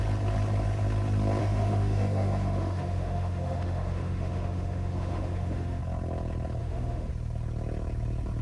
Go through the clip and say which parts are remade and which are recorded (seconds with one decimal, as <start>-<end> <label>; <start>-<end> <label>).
0.0-1.4 recorded; 1.4-5.8 remade; 5.8-6.6 recorded; 6.6-7.1 remade; 7.1-8.4 recorded